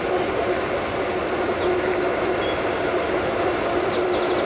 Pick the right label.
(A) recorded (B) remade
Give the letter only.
A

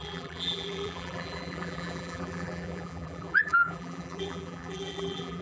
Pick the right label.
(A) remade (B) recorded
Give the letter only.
A